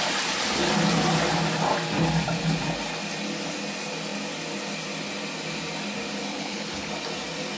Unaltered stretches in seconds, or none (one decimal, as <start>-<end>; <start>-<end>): 0.0-6.3; 6.9-7.6